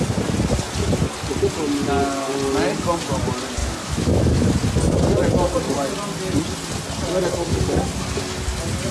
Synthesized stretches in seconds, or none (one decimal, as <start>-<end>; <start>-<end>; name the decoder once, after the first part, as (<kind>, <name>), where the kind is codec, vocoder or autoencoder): 3.6-4.5 (autoencoder, DAC-VAE)